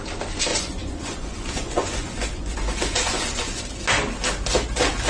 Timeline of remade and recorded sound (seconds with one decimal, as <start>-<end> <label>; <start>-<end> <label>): 0.0-0.5 recorded; 0.5-3.6 remade; 3.6-5.1 recorded

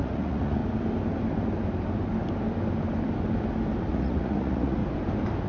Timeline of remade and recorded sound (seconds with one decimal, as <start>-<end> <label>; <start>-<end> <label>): 0.0-0.6 remade; 0.6-3.9 recorded; 3.9-4.8 remade; 4.8-5.5 recorded